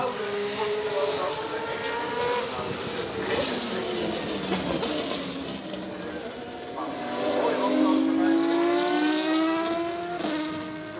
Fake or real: real